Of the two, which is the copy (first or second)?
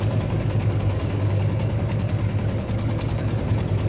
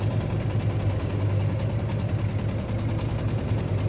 first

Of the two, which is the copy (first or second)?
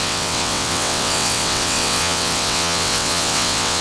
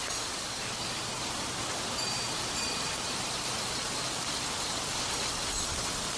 first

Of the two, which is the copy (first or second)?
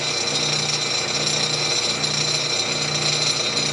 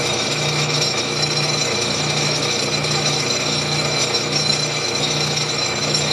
second